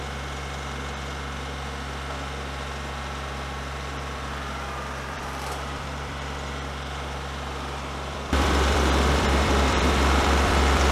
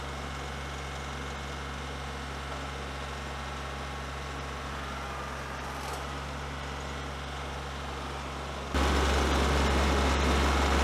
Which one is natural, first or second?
second